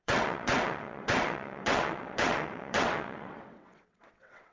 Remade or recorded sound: remade